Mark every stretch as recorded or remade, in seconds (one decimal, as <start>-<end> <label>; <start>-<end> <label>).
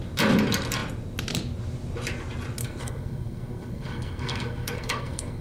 0.0-2.6 recorded; 2.6-5.4 remade